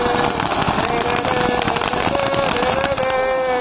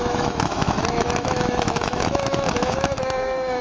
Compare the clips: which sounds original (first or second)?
first